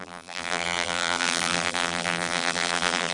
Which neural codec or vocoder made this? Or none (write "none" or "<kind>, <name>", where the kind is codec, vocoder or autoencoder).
vocoder, BigVGAN v2